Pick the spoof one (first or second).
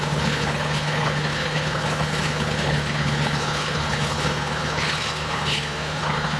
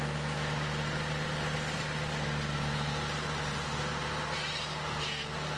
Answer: first